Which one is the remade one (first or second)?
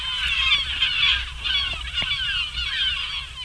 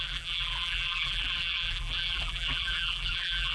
second